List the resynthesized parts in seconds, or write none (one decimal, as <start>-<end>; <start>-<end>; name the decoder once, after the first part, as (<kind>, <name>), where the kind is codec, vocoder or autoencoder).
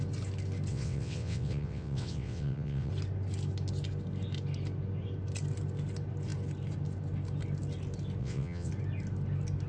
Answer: 0.7-2.9 (vocoder, WaveNeXt); 8.2-8.7